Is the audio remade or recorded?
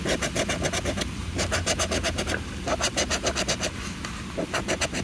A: recorded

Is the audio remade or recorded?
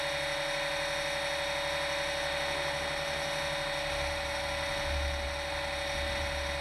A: recorded